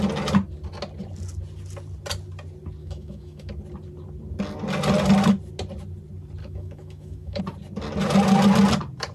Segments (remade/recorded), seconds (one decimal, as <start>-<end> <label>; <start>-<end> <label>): 0.0-2.8 recorded; 2.8-3.5 remade; 3.5-6.4 recorded; 6.4-7.4 remade; 7.4-9.1 recorded